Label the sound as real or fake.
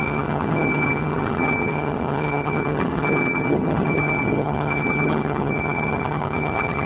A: fake